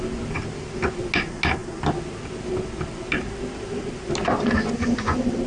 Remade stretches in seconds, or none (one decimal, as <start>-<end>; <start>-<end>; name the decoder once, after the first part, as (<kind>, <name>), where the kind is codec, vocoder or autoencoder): none